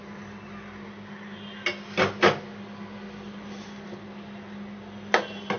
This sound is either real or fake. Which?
real